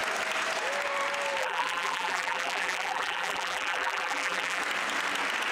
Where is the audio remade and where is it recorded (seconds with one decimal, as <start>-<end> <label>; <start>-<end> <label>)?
0.0-1.4 recorded; 1.4-4.6 remade; 4.6-5.5 recorded